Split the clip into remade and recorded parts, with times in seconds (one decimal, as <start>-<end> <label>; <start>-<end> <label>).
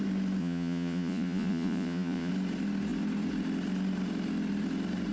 0.0-0.4 recorded; 0.4-2.3 remade; 2.3-5.1 recorded